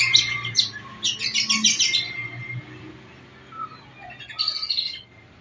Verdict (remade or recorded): recorded